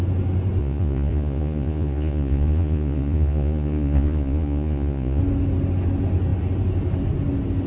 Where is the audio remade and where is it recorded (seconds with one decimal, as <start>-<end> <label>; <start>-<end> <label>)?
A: 0.0-0.6 recorded; 0.6-5.2 remade; 5.2-7.7 recorded